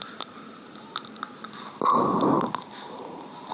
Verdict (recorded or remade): remade